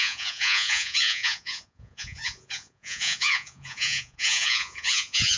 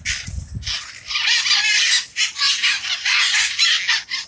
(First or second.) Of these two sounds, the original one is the second